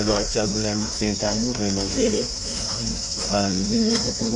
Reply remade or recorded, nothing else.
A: remade